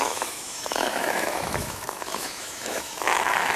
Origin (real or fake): fake